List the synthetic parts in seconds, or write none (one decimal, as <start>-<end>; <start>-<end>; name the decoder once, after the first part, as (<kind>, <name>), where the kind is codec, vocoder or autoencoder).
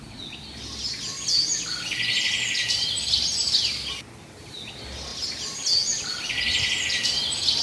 none